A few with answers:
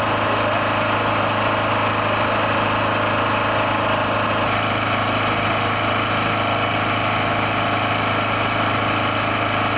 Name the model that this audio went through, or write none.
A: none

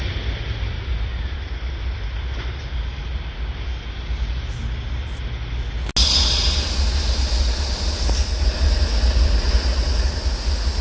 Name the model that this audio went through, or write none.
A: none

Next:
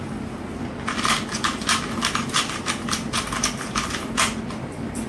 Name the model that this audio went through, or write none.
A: none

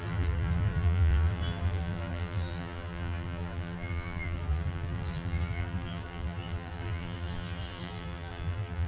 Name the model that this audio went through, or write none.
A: vocoder, BigVGAN v2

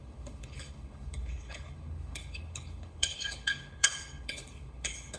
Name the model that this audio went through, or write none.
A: codec, HILCodec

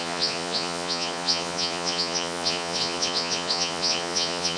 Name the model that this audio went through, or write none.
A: vocoder, Vocos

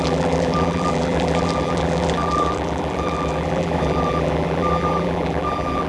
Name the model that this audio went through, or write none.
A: vocoder, BigVGAN v2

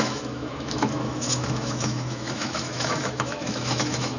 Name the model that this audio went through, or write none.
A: autoencoder, DAC-VAE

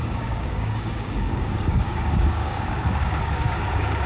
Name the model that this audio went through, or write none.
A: codec, DAC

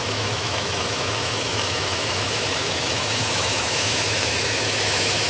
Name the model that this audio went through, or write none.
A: autoencoder, DAC-VAE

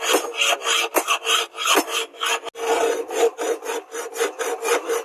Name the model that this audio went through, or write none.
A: none